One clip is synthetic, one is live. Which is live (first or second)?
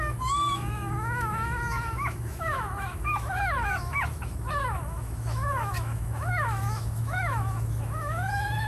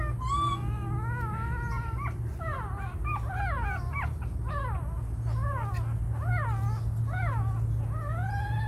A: second